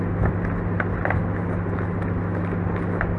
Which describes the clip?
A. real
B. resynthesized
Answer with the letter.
A